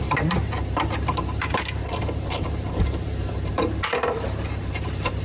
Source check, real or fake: fake